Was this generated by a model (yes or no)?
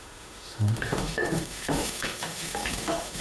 yes